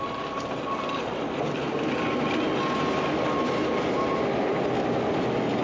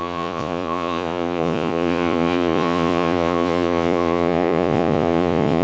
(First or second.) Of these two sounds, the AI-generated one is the second